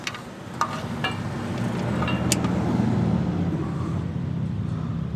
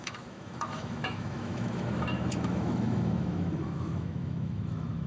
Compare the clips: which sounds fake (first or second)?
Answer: second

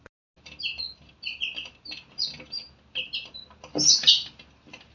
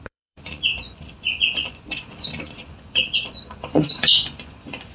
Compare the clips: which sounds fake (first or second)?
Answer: second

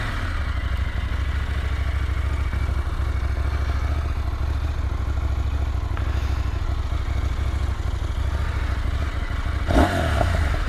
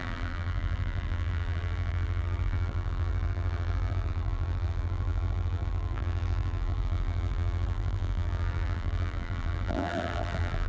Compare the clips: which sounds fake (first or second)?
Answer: second